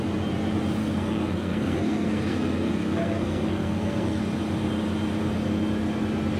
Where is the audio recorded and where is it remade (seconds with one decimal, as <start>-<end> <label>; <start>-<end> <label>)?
0.0-0.8 recorded; 0.8-4.2 remade; 4.2-6.4 recorded